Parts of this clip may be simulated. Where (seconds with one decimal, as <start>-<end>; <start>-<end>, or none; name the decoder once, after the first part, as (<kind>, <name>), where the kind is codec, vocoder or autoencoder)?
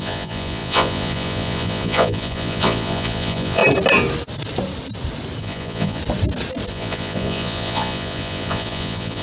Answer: 0.0-3.6 (vocoder, Vocos); 5.4-6.0; 6.7-9.2